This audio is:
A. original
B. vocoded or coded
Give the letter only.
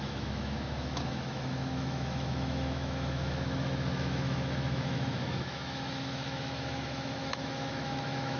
B